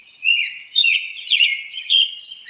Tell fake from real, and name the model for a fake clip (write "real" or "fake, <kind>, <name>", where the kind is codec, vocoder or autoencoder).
fake, vocoder, Vocos